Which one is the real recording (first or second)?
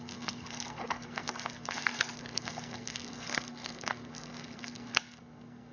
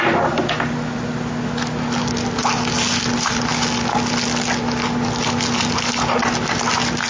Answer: second